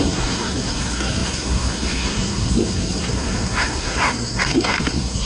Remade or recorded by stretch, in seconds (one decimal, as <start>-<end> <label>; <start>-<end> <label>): 0.0-5.3 remade